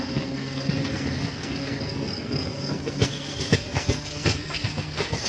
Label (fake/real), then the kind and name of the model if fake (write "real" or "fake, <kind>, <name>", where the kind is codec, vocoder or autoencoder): fake, codec, SNAC